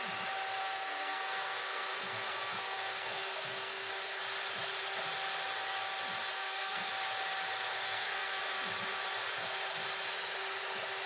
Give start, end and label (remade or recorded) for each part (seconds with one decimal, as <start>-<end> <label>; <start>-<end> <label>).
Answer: 0.0-0.6 recorded; 0.6-4.2 remade; 4.2-6.3 recorded; 6.3-6.9 remade; 6.9-7.7 recorded; 7.7-8.4 remade; 8.4-11.1 recorded